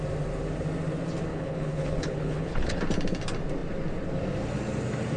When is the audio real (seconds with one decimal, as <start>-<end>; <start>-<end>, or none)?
0.0-1.3; 2.8-5.2